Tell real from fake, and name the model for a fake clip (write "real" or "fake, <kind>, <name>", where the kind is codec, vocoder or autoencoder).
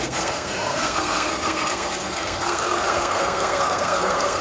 fake, codec, SNAC